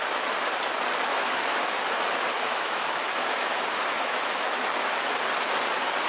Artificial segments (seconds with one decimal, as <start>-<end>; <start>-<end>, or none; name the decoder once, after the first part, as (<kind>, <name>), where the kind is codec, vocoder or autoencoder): 1.1-1.8 (autoencoder, DAC-VAE); 2.3-4.6